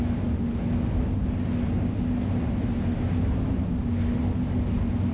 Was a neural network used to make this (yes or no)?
no